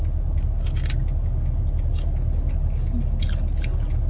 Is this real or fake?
real